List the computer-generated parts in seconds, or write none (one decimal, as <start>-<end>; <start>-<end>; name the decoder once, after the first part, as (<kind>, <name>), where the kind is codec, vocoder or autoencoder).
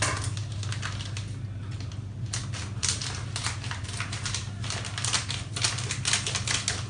none